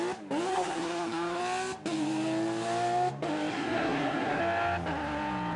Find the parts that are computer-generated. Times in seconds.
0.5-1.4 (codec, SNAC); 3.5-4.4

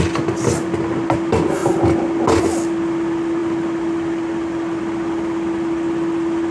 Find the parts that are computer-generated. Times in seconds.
none

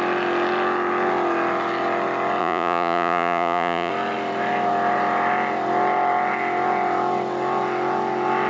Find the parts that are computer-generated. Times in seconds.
2.4-3.9 (vocoder, Vocos)